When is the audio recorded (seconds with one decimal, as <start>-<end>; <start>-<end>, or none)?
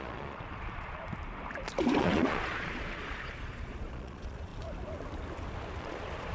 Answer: 1.0-2.0; 4.5-5.8